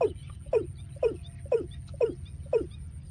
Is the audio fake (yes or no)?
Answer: no